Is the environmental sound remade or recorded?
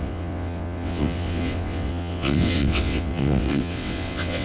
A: remade